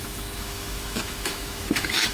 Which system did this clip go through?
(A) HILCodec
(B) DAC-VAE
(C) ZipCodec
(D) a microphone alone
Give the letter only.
B